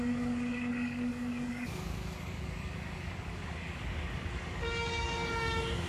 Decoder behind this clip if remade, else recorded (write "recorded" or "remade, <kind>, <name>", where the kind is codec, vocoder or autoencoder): remade, codec, DAC